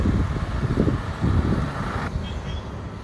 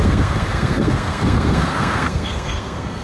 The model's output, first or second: second